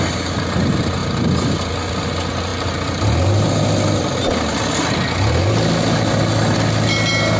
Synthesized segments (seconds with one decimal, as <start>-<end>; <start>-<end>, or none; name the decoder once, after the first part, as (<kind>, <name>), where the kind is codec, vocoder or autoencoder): none